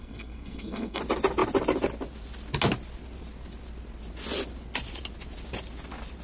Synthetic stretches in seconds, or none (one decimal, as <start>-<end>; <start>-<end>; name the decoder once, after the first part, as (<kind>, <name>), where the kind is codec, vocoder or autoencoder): 0.0-1.0 (codec, SNAC)